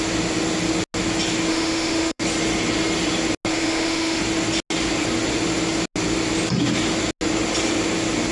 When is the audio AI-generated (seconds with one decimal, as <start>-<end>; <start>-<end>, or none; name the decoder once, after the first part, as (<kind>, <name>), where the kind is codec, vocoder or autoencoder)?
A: 1.5-2.2 (autoencoder, DAC-VAE); 3.5-4.2